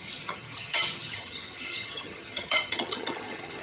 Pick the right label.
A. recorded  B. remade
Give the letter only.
B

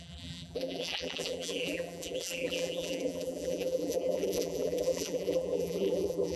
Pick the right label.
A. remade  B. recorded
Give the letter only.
A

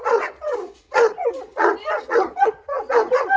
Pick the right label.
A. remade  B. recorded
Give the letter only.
A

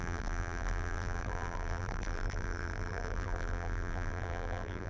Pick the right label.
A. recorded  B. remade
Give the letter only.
B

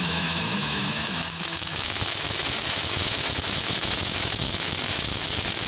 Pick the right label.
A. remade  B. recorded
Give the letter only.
A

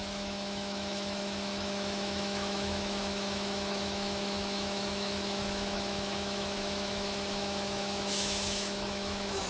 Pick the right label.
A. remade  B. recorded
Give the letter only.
A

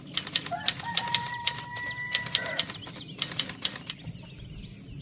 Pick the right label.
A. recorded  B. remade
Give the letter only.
A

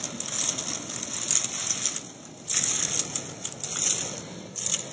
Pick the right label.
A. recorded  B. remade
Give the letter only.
A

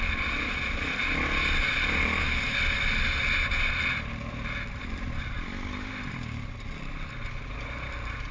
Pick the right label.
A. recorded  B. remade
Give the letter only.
A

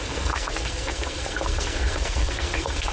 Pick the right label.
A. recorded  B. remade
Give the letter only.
B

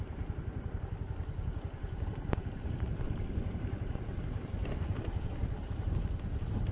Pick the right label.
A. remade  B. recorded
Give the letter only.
B